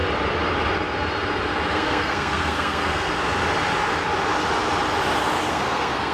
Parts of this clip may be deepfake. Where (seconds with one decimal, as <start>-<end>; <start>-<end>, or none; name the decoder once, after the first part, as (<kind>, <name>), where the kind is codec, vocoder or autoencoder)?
1.7-3.1 (codec, SNAC); 5.5-6.1